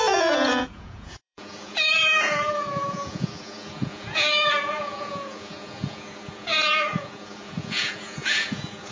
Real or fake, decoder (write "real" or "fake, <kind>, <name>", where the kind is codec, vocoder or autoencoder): fake, vocoder, Vocos